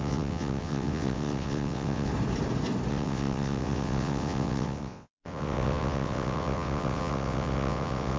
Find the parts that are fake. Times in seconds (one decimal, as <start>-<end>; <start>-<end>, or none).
0.0-2.1; 2.9-8.2